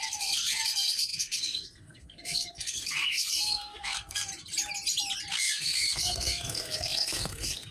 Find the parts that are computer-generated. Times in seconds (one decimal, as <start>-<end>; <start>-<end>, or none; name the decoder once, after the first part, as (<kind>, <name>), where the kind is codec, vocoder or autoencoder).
0.0-4.3 (codec, SNAC); 5.3-7.7